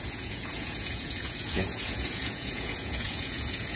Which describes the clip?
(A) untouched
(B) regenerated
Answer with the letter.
B